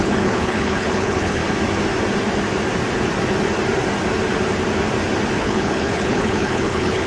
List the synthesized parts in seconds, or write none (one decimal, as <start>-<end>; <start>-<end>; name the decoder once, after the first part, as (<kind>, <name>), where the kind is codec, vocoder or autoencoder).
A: 0.0-1.4 (codec, HILCodec); 5.4-7.1